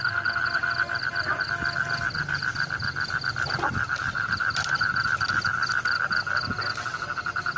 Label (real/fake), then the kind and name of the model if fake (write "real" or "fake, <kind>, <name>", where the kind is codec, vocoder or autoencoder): real